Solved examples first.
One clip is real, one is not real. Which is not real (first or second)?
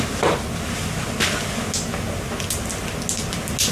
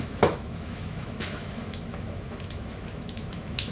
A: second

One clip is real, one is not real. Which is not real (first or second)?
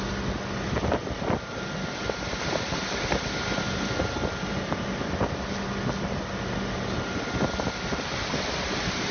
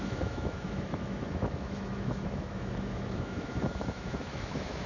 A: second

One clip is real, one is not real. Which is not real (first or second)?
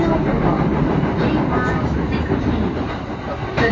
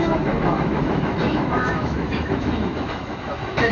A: second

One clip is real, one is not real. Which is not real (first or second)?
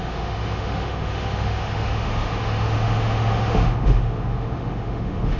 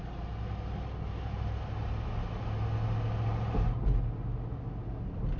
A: first